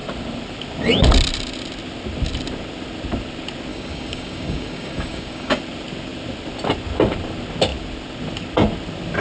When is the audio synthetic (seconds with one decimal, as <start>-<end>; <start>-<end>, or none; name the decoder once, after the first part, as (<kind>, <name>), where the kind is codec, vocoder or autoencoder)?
3.7-5.6 (codec, DAC)